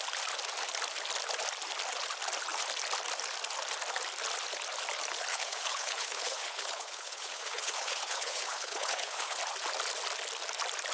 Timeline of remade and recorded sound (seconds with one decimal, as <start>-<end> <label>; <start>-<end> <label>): 0.0-5.3 recorded; 5.3-9.4 remade; 9.4-10.9 recorded

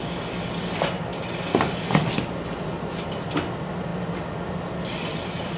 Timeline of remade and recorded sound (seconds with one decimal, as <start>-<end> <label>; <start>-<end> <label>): 0.0-5.6 recorded

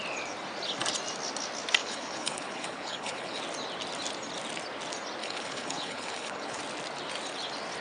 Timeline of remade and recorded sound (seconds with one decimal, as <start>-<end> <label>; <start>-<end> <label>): 0.0-1.8 recorded; 1.8-3.4 remade; 3.4-5.2 recorded; 5.2-6.6 remade; 6.6-7.8 recorded

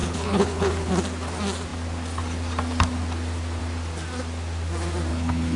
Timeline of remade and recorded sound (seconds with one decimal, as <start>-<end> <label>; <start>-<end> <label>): 0.0-0.9 remade; 0.9-5.1 recorded; 5.1-5.6 remade

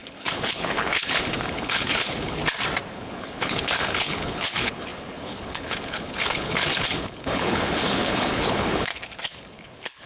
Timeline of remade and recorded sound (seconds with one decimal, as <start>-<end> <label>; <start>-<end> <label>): 0.0-2.4 remade; 2.4-2.9 recorded; 2.9-10.1 remade

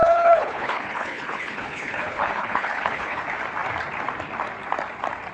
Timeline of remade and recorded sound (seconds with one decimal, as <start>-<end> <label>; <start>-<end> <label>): 0.0-3.2 remade; 3.2-5.3 recorded

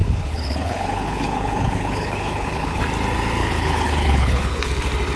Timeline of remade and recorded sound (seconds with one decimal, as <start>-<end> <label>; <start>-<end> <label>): 0.0-2.8 remade; 2.8-3.4 recorded; 3.4-4.7 remade; 4.7-5.2 recorded

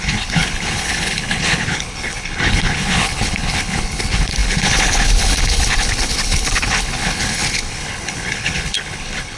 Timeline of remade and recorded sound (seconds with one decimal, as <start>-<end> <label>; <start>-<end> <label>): 0.0-9.4 remade